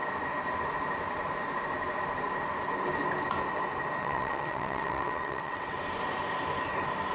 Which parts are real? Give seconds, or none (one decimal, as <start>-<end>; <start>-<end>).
0.0-4.0; 5.8-7.1